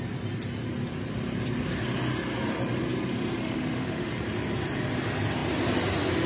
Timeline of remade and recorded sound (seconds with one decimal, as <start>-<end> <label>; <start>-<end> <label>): 0.0-3.4 recorded; 3.4-4.1 remade; 4.1-6.3 recorded